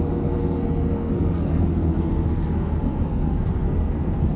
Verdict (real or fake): fake